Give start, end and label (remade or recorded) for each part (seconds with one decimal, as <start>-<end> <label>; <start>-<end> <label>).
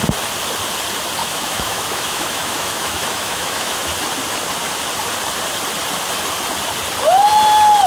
0.0-1.2 recorded; 1.2-3.8 remade; 3.8-7.9 recorded